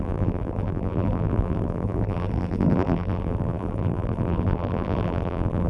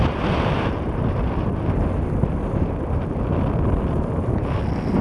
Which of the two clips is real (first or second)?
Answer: second